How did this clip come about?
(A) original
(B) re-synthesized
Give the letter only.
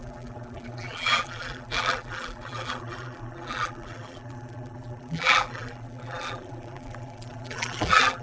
B